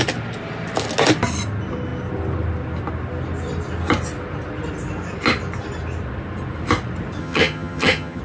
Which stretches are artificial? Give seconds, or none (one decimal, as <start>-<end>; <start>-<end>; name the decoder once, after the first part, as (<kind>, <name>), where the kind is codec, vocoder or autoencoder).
7.2-8.2 (vocoder, HiFi-GAN)